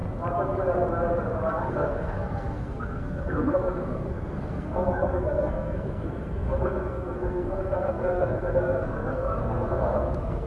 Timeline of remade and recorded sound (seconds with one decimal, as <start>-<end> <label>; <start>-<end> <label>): 0.0-1.7 recorded; 1.7-10.5 remade